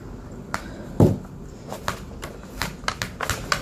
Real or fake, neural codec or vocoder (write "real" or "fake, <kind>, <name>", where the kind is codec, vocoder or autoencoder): real